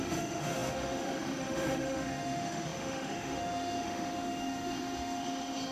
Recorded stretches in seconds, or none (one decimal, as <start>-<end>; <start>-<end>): none

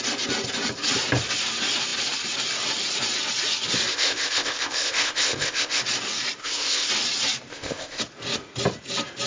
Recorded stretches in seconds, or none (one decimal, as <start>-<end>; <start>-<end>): 0.0-3.9; 5.8-6.4; 6.9-7.5; 8.0-9.3

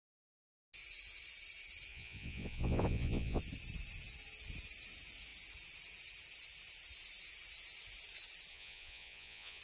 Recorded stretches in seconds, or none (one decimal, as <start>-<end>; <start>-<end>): 0.0-1.9; 3.4-8.5

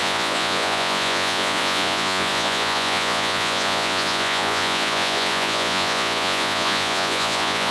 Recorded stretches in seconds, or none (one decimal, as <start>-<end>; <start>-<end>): none